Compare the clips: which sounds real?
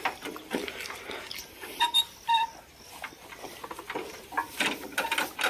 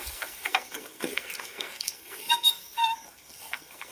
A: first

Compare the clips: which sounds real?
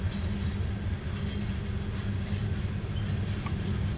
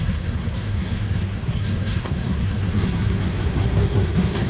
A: first